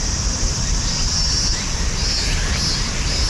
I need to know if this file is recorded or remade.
recorded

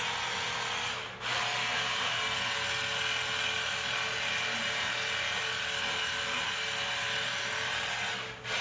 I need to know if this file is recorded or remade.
recorded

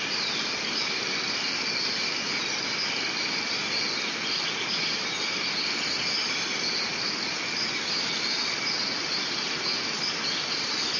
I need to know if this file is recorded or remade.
recorded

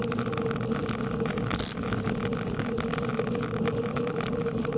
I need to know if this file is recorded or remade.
recorded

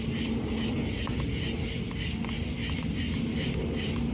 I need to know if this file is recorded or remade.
recorded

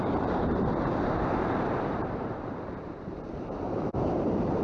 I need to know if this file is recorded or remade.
remade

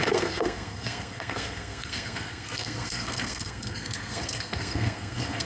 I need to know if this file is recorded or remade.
remade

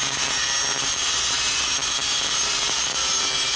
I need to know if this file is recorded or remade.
remade